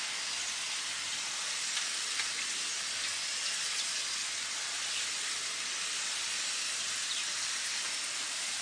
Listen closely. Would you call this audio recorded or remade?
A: recorded